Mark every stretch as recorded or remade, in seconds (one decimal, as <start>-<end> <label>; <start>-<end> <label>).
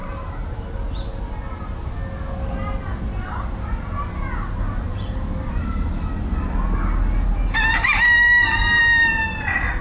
0.0-9.8 recorded